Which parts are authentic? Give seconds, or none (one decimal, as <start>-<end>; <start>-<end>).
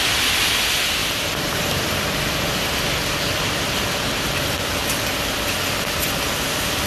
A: 0.0-1.0; 2.6-6.9